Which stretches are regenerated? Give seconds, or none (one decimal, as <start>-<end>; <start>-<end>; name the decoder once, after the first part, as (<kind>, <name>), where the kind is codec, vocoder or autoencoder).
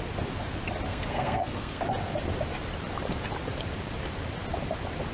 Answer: 0.9-1.8 (codec, SNAC)